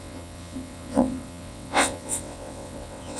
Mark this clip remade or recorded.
remade